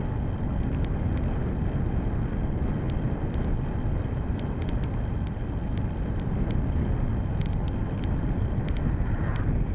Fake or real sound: real